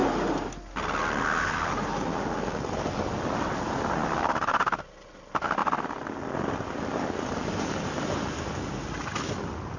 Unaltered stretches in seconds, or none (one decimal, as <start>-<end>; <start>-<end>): 0.0-9.8